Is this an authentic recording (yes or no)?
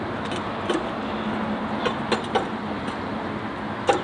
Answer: yes